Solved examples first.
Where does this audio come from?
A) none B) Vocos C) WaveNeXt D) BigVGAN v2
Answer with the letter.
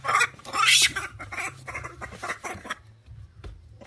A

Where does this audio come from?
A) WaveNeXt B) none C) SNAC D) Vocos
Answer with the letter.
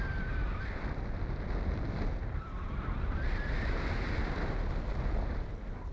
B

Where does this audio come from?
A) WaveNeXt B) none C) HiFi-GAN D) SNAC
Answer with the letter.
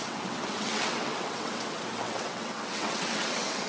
A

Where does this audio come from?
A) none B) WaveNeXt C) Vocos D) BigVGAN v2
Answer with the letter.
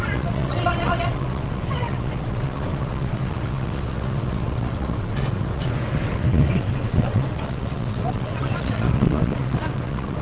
B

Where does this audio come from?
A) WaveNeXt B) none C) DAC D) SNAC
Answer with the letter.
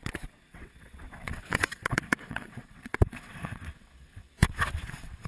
A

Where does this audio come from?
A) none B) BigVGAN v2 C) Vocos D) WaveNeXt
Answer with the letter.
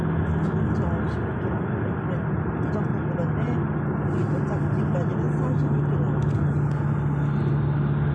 A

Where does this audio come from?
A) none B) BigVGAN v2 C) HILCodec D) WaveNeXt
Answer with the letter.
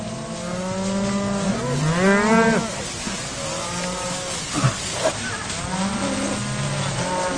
A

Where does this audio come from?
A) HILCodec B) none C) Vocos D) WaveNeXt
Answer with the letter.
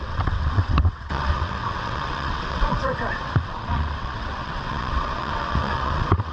D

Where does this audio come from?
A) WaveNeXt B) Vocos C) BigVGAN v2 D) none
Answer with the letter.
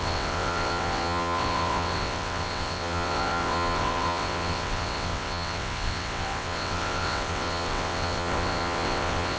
A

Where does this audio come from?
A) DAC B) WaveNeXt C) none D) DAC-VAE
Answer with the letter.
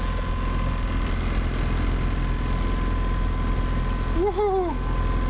C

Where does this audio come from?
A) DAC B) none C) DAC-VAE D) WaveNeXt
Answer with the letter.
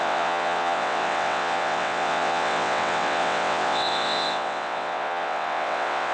D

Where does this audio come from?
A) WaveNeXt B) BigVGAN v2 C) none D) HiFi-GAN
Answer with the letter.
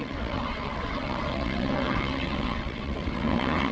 A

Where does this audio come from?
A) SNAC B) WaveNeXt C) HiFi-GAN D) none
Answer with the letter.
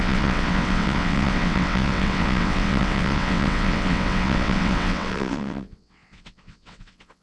B